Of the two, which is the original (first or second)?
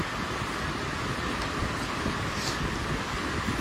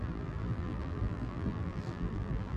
first